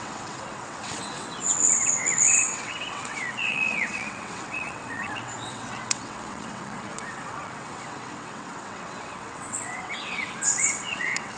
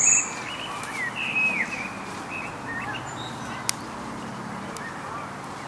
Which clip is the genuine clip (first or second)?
second